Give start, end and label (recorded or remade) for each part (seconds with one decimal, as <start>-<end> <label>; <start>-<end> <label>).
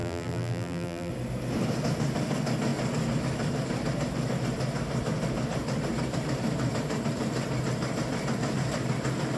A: 0.0-1.1 remade; 1.1-9.4 recorded